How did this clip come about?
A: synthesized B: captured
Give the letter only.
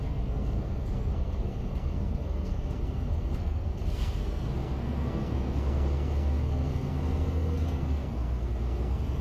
A